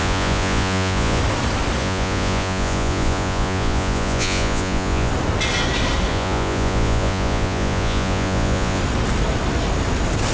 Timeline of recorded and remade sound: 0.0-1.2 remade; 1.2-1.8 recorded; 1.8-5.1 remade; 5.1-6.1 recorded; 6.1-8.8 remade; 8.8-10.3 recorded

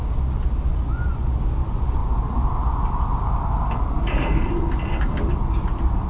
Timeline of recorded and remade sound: 0.0-0.7 recorded; 0.7-1.3 remade; 1.3-6.1 recorded

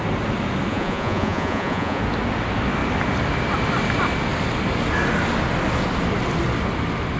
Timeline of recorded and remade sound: 0.0-0.7 recorded; 0.7-2.0 remade; 2.0-7.2 recorded

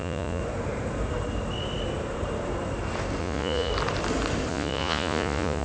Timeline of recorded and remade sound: 0.0-0.4 remade; 0.4-3.2 recorded; 3.2-3.7 remade; 3.7-4.5 recorded; 4.5-5.6 remade

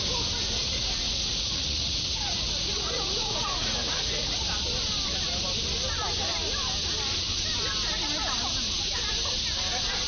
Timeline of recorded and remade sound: 0.0-0.6 recorded; 0.6-4.4 remade; 4.4-10.1 recorded

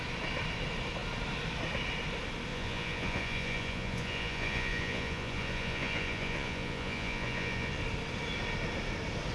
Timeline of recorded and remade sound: 0.0-2.5 recorded; 2.5-7.8 remade; 7.8-9.3 recorded

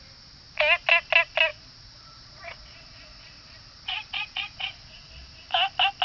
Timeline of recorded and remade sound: 0.0-1.5 recorded; 1.5-5.1 remade; 5.1-6.0 recorded